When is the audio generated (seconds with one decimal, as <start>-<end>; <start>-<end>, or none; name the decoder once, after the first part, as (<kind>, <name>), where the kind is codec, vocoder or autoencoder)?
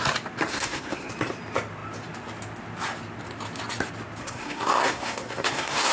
0.5-1.1 (codec, SNAC); 4.2-5.9